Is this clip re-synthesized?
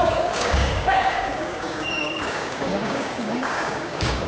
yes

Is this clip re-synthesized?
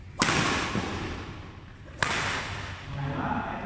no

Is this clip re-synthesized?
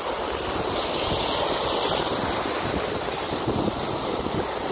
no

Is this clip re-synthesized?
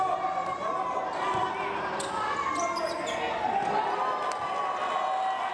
no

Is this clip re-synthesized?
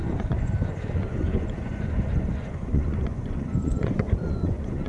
yes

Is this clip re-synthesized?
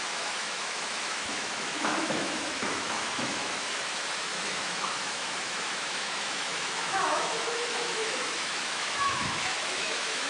yes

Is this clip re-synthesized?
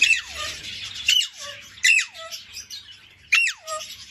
yes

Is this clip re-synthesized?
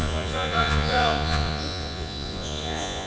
yes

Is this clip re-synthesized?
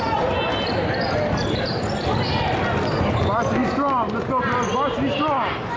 no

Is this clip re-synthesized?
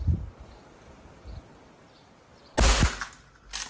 no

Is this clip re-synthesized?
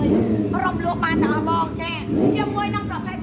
no